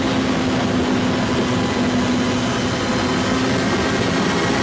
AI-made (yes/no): no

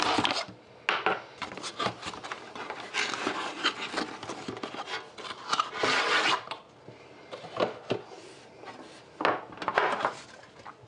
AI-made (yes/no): no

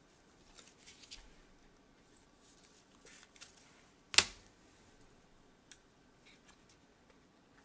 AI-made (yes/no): no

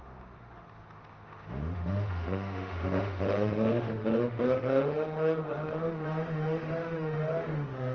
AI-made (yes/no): yes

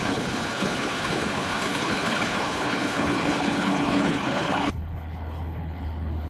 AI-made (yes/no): yes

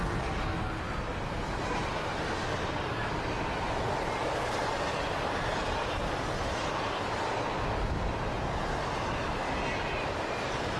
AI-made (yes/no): no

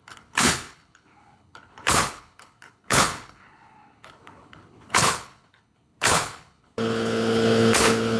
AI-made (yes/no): yes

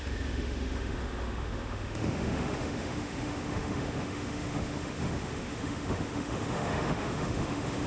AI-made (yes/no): yes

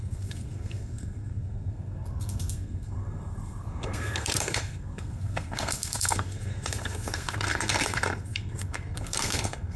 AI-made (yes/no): yes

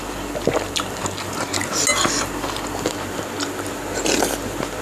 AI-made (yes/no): no